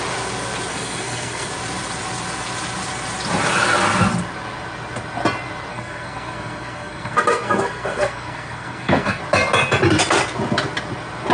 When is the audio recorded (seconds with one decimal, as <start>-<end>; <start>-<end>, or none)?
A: 0.0-0.7; 1.5-5.7; 9.2-11.3